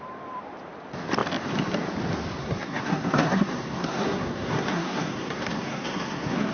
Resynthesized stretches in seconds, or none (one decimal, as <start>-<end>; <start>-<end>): 2.4-6.5